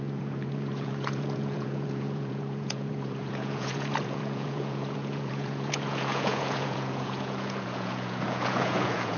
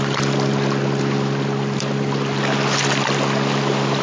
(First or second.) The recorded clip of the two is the second